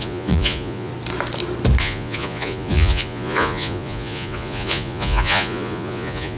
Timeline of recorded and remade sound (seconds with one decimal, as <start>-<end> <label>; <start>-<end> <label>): 0.0-0.9 remade; 0.9-1.8 recorded; 1.8-6.4 remade